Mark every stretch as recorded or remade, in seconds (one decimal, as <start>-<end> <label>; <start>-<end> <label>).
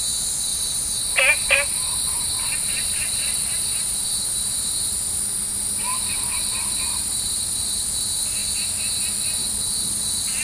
0.0-0.5 recorded; 0.5-4.7 remade; 4.7-5.9 recorded; 5.9-7.8 remade; 7.8-10.4 recorded